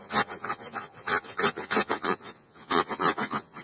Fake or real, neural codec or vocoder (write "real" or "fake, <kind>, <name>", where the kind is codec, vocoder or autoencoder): fake, vocoder, Vocos